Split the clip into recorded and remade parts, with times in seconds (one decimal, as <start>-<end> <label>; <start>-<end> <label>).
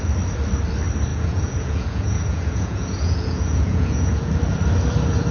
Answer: 0.0-1.1 recorded; 1.1-4.3 remade; 4.3-5.3 recorded